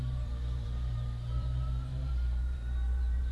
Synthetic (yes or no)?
yes